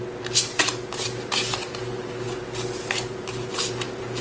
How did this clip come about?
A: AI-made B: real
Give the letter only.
B